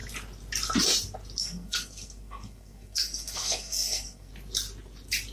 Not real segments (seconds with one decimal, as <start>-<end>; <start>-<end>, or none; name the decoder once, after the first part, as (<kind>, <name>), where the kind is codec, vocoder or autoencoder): 1.4-4.3 (codec, SNAC)